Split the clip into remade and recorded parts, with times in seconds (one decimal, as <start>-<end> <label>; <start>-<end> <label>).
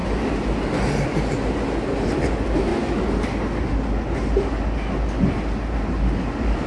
0.0-6.7 recorded